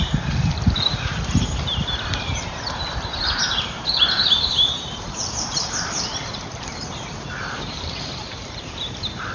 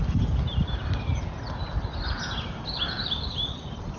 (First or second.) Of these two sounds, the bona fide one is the second